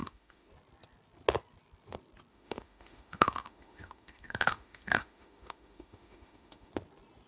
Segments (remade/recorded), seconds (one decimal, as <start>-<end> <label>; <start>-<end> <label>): 0.0-0.5 remade; 0.5-2.3 recorded; 2.3-6.7 remade; 6.7-7.3 recorded